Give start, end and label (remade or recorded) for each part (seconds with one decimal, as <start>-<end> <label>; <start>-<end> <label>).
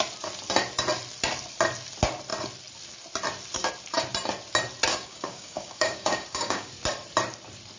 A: 0.0-4.9 recorded; 4.9-6.7 remade; 6.7-7.8 recorded